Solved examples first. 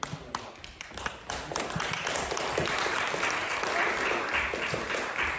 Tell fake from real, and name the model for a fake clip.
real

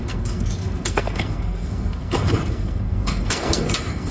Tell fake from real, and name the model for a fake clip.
fake, codec, SNAC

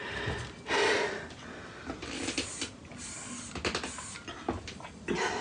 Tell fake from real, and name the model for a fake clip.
real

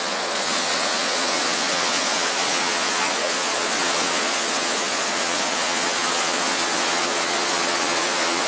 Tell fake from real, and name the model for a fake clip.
fake, vocoder, Vocos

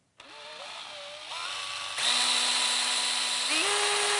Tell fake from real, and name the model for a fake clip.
real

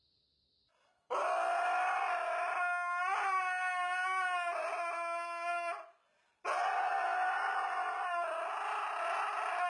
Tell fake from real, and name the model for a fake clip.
real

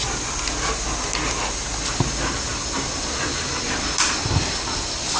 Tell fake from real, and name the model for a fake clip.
real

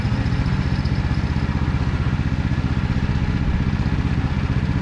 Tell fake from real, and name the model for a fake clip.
real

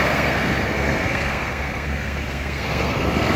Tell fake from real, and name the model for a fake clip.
fake, codec, SNAC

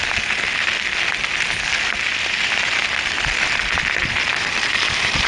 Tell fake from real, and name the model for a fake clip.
real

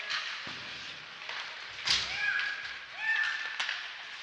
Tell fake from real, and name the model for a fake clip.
real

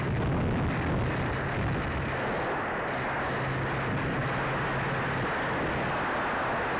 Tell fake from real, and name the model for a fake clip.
real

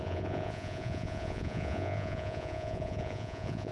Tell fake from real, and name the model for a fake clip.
fake, vocoder, Vocos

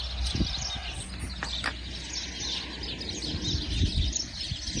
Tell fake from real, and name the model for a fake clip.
real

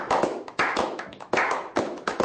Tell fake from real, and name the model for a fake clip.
fake, autoencoder, DAC-VAE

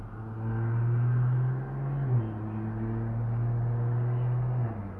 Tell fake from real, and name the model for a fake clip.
real